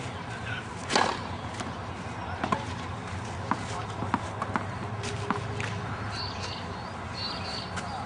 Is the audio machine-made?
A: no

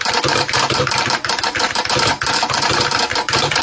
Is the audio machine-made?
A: yes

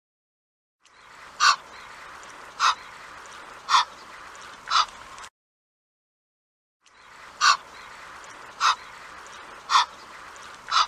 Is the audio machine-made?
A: no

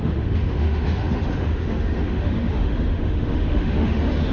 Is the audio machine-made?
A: yes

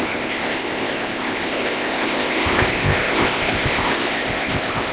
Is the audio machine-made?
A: yes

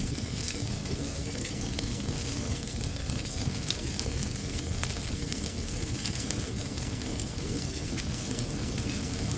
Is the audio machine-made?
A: yes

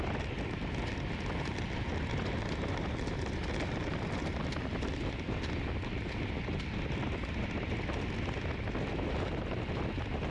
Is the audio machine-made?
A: no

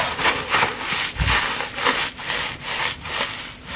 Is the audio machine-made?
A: no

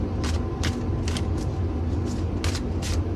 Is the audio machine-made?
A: no